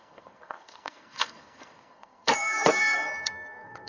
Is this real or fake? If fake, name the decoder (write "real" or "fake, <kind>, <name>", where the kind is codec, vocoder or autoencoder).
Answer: fake, codec, SNAC